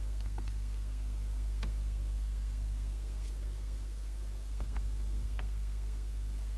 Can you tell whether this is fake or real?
fake